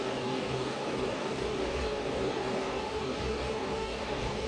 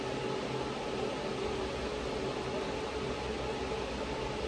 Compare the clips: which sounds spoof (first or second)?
first